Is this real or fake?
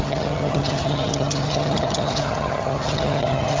fake